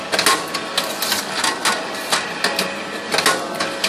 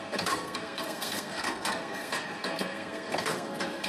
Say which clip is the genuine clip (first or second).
first